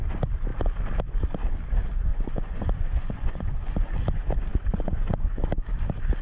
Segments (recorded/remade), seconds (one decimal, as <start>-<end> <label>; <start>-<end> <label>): 0.0-2.1 recorded; 2.1-3.7 remade; 3.7-4.5 recorded; 4.5-5.5 remade; 5.5-6.2 recorded